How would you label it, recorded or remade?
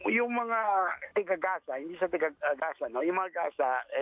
remade